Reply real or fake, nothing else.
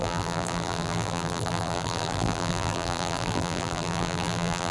fake